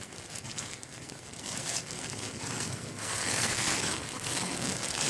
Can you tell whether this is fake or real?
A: fake